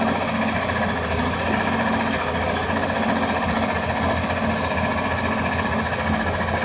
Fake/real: real